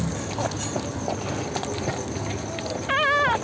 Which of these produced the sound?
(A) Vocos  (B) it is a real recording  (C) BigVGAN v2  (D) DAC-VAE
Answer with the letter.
B